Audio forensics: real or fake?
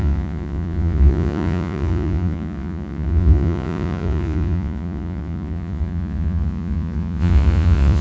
fake